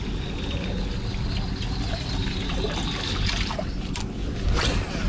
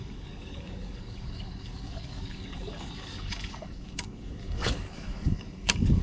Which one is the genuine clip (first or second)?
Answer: first